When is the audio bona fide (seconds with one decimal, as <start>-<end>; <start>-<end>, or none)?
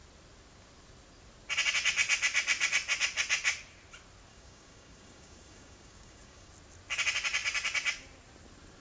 0.0-4.3; 6.5-8.8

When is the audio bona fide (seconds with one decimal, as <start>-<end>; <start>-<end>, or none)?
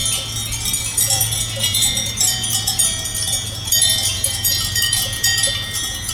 0.0-0.8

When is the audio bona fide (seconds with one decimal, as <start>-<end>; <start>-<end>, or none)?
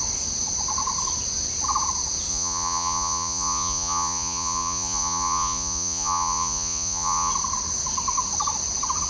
0.0-2.3; 7.3-9.1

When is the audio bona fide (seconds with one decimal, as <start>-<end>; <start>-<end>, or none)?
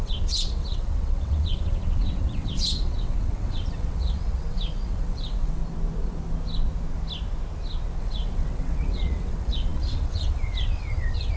5.6-8.0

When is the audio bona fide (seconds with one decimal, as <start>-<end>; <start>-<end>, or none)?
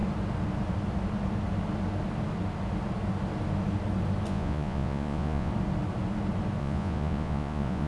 0.0-4.3; 5.5-6.6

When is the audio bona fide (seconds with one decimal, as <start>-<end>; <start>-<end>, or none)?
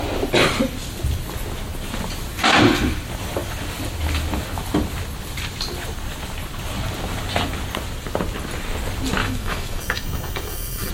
0.0-9.2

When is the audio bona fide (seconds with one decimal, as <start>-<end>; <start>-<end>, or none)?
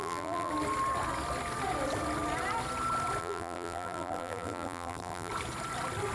0.5-3.2; 5.3-6.1